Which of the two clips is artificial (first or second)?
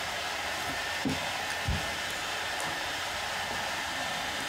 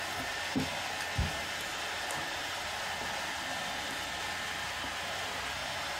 first